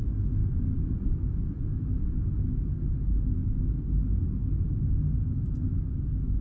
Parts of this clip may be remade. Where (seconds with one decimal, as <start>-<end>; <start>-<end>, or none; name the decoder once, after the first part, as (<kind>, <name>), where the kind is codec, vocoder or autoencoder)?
0.4-2.3 (vocoder, BigVGAN v2)

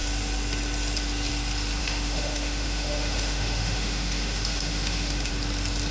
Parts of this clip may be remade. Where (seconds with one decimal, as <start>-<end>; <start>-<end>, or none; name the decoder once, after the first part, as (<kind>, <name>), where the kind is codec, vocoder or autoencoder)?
1.8-5.3 (autoencoder, DAC-VAE)

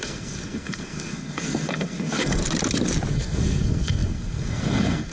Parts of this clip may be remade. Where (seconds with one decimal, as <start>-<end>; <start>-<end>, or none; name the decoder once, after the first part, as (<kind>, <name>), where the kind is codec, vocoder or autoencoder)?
0.0-2.4 (codec, SNAC); 3.1-5.1

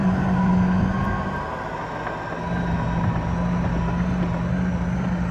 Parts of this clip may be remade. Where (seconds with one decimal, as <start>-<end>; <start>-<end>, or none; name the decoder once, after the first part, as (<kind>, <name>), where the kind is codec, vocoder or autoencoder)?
0.0-0.5 (vocoder, BigVGAN v2)

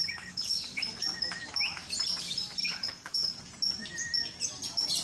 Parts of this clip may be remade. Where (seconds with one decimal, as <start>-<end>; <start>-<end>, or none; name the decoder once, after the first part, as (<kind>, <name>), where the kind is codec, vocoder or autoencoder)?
0.0-0.8 (codec, HILCodec); 2.6-3.4